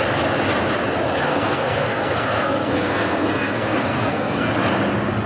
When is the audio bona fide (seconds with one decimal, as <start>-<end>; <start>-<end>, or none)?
0.0-1.3; 4.5-5.3